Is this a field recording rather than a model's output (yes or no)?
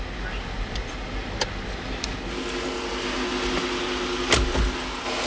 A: yes